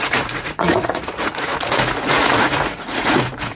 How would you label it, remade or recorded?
remade